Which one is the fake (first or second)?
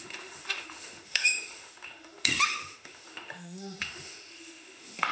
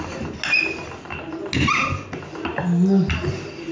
first